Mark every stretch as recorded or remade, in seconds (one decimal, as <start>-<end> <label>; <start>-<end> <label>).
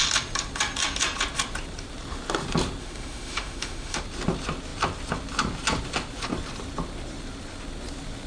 0.0-2.8 recorded; 2.8-4.0 remade; 4.0-8.3 recorded